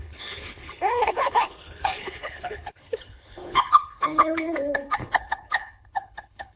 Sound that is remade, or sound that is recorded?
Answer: remade